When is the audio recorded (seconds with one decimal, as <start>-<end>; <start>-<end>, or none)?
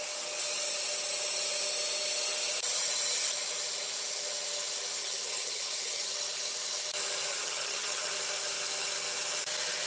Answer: 0.0-5.0; 6.1-7.3; 8.1-9.9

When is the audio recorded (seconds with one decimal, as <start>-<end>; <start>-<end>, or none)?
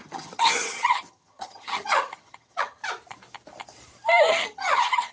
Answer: 2.8-4.3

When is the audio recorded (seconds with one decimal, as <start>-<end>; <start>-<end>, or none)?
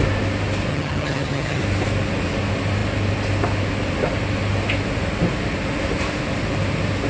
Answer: 0.0-0.7; 1.6-7.1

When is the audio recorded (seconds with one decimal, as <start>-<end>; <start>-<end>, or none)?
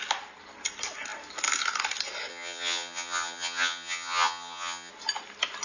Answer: 0.0-2.3; 4.9-5.6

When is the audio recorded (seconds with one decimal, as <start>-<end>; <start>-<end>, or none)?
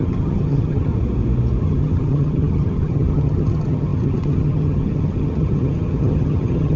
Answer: 0.9-1.6